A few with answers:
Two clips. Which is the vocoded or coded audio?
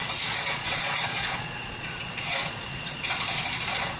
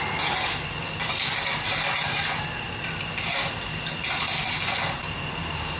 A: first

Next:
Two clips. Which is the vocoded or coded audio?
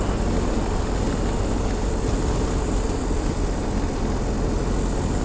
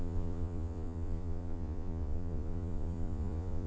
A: second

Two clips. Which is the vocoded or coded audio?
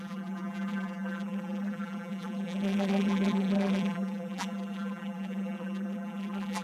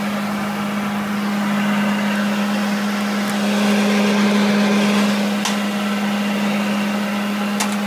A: first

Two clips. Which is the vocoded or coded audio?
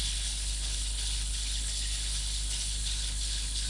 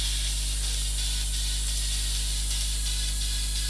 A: first